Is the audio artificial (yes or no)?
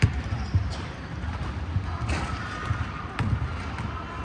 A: no